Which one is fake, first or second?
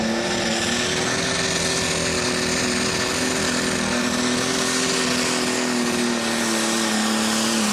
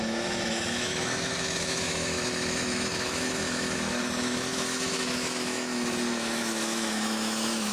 second